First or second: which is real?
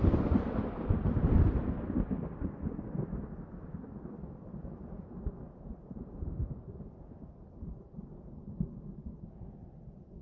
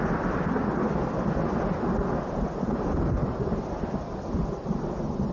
second